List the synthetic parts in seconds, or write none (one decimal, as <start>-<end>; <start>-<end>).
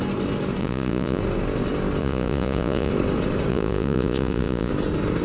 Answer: 0.6-1.2; 2.0-2.9; 3.5-4.7